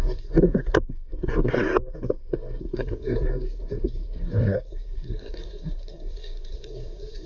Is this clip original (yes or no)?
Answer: no